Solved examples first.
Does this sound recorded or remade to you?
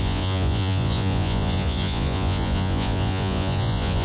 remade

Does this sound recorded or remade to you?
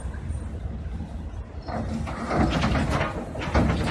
recorded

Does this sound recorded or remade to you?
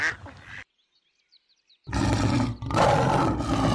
recorded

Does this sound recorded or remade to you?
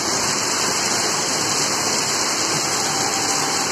recorded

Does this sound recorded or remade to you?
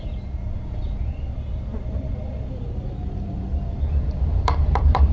remade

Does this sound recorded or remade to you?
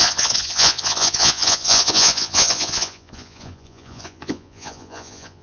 remade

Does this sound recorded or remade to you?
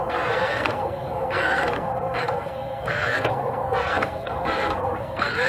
remade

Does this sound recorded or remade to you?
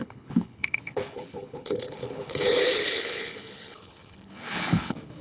remade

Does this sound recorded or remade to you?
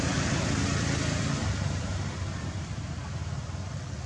recorded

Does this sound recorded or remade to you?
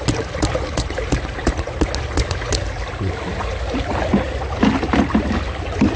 recorded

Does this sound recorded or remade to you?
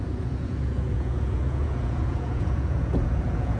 remade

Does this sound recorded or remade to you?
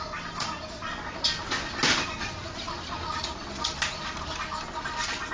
recorded